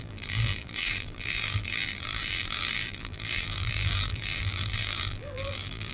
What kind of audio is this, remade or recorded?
remade